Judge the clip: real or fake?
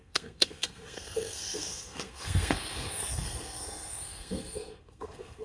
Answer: fake